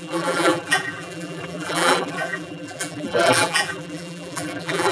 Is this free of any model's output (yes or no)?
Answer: no